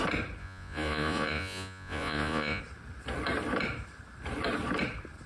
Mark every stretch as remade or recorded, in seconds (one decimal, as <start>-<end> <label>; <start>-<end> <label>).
0.0-0.4 recorded; 0.4-2.6 remade; 2.6-5.3 recorded